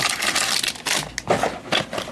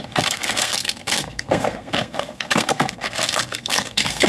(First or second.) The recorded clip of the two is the first